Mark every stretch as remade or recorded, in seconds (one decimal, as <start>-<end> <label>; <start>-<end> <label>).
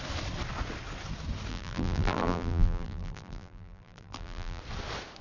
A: 0.0-1.5 recorded; 1.5-4.6 remade; 4.6-5.2 recorded